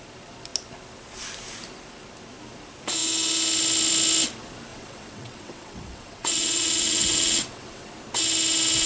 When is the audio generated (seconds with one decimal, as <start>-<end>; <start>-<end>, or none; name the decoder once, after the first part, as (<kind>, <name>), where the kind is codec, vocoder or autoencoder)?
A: 4.7-7.9 (vocoder, WaveNeXt)